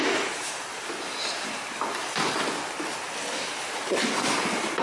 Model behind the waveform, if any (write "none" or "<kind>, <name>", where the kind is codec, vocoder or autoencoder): none